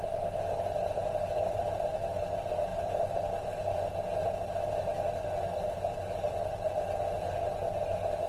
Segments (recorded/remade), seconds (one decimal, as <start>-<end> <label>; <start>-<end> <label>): 0.0-8.3 recorded